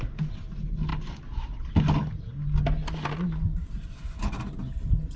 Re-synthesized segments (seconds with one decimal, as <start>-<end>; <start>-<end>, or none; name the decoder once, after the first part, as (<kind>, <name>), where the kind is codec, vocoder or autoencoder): none